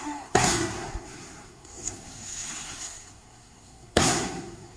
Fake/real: fake